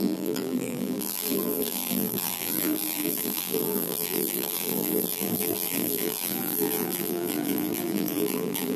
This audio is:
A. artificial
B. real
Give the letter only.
A